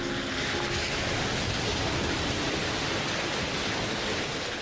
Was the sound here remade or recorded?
recorded